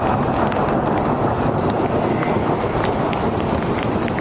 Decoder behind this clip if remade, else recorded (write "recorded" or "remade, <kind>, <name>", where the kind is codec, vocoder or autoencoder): recorded